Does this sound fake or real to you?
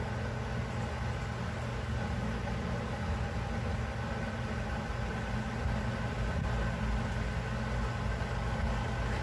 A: real